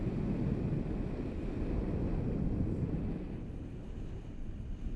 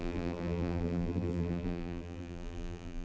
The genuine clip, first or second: first